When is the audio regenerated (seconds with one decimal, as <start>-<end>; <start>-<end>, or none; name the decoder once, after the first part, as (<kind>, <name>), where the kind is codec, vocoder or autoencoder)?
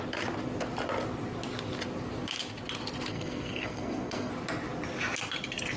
3.1-4.3 (codec, SNAC)